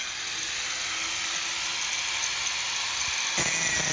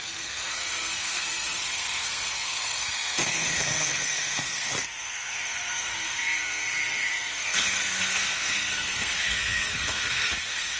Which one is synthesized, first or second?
second